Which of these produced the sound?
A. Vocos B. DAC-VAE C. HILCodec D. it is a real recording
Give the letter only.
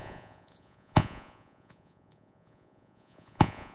A